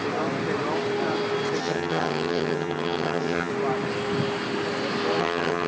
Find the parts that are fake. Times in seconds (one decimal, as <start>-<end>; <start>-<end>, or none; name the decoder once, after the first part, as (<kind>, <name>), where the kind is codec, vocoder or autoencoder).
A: 1.6-3.5 (vocoder, HiFi-GAN); 5.2-5.7